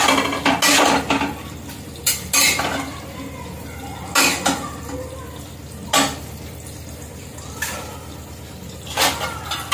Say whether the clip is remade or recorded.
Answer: recorded